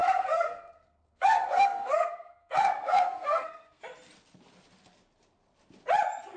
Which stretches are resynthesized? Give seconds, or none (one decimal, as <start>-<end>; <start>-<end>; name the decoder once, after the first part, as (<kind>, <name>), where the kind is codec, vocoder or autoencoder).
0.0-3.8 (codec, SNAC)

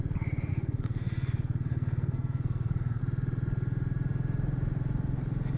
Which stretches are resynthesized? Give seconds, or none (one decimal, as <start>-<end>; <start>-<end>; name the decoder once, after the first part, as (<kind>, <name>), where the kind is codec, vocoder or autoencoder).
0.5-3.0 (codec, SNAC)

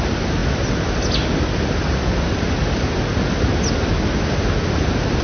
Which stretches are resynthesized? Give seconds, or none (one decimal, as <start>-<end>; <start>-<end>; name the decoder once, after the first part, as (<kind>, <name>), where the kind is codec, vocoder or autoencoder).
none

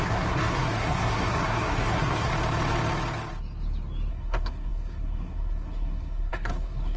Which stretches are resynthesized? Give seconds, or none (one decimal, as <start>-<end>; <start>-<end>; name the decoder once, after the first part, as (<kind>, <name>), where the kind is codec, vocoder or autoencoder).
0.0-2.3 (codec, SNAC); 4.1-7.0

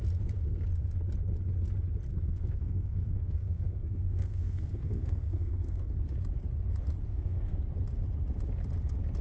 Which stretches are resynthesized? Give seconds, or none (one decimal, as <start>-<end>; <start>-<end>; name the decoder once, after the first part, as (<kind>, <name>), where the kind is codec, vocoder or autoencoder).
2.1-5.9 (codec, SNAC); 7.1-7.6

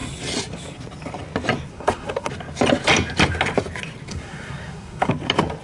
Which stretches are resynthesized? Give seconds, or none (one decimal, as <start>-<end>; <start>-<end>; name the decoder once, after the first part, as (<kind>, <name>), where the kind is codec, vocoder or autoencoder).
1.7-2.3 (codec, SNAC); 4.1-5.1